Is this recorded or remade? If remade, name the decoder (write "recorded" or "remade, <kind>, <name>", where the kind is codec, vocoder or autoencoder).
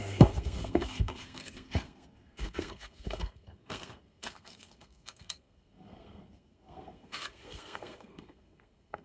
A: remade, codec, SNAC